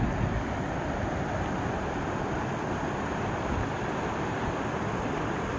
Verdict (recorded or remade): recorded